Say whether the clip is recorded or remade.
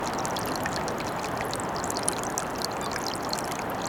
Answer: recorded